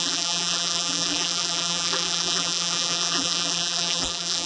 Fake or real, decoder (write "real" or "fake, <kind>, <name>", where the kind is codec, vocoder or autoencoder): fake, vocoder, BigVGAN v2